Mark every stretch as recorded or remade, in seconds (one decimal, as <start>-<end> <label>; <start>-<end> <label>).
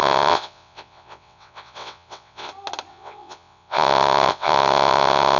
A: 0.0-2.5 remade; 2.5-2.9 recorded; 2.9-5.4 remade